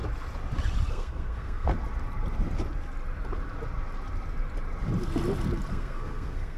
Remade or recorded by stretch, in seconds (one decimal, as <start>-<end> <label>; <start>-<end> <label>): 0.0-0.9 recorded; 0.9-1.7 remade; 1.7-5.7 recorded; 5.7-6.6 remade